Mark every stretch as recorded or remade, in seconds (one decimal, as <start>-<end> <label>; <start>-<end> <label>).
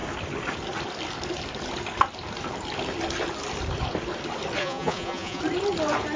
0.0-4.6 recorded; 4.6-5.4 remade; 5.4-6.2 recorded